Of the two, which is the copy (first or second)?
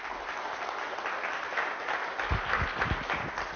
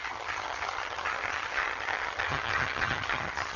second